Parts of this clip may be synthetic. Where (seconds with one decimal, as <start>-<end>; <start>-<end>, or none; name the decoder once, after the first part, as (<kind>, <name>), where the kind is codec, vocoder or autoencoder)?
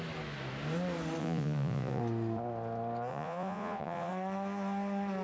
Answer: 1.2-2.0 (vocoder, Vocos); 3.1-4.1